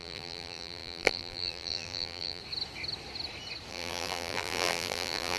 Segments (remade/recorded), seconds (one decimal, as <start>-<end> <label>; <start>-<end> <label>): 0.0-2.4 remade; 2.4-3.7 recorded; 3.7-5.4 remade